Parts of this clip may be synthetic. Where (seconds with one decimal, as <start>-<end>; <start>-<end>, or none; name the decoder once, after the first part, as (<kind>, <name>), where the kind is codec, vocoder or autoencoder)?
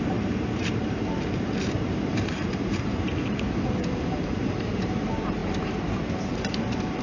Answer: 0.0-7.0 (vocoder, BigVGAN v2)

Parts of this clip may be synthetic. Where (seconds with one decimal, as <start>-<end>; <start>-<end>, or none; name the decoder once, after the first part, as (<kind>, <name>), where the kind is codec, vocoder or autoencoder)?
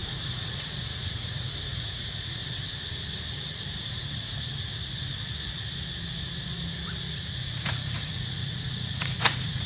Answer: 0.0-2.4 (vocoder, Vocos); 7.0-9.7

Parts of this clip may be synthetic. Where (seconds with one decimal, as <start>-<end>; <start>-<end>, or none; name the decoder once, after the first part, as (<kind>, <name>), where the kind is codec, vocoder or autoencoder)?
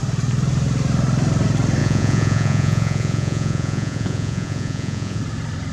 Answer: 1.8-5.2 (vocoder, Vocos)